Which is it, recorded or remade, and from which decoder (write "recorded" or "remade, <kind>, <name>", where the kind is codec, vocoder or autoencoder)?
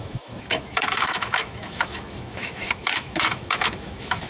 remade, autoencoder, DAC-VAE